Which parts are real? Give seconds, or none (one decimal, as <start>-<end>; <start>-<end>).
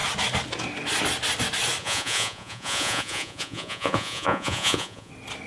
0.0-1.8; 5.1-5.5